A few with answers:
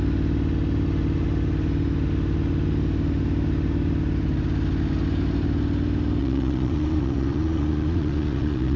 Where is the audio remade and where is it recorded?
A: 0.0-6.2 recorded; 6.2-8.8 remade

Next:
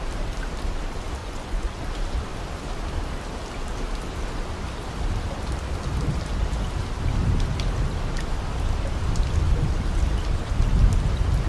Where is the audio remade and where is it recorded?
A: 0.0-1.2 recorded; 1.2-1.8 remade; 1.8-11.5 recorded

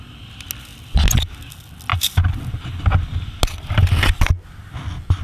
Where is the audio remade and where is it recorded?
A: 0.0-5.2 recorded